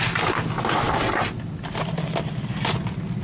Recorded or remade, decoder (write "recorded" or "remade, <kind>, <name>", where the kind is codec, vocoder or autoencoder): recorded